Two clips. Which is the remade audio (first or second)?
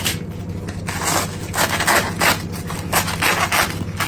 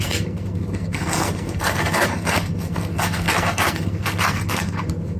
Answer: second